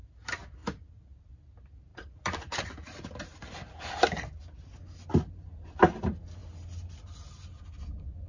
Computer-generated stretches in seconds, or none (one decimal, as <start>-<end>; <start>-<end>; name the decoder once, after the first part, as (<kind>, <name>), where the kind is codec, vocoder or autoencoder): 1.9-4.4 (vocoder, BigVGAN v2)